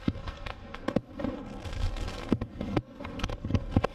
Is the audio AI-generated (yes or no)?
yes